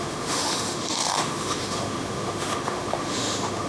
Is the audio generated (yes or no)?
yes